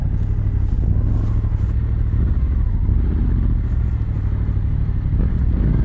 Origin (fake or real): real